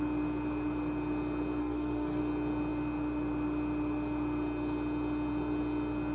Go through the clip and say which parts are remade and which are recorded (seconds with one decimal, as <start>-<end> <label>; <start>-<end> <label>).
0.0-1.6 recorded; 1.6-2.2 remade; 2.2-6.1 recorded